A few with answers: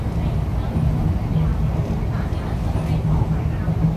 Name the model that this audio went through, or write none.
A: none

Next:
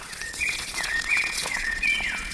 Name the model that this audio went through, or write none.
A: vocoder, Vocos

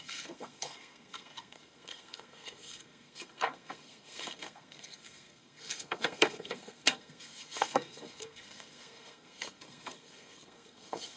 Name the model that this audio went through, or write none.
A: codec, SNAC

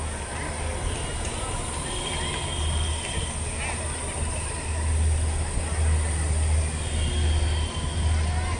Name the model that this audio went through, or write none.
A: none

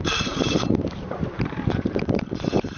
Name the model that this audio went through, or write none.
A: vocoder, BigVGAN v2